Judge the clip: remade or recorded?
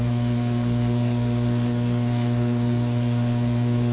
remade